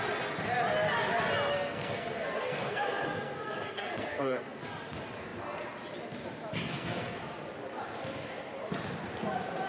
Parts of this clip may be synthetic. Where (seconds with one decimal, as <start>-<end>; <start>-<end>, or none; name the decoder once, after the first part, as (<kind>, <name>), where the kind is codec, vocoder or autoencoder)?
1.5-4.6 (codec, SNAC); 6.5-7.2